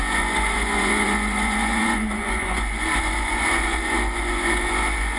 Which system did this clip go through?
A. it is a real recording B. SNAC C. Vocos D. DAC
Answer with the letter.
C